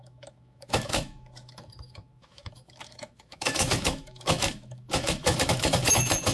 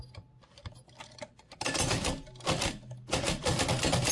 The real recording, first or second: second